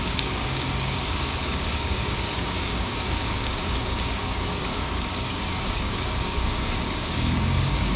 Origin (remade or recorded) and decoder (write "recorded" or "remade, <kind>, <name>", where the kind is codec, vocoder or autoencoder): remade, codec, DAC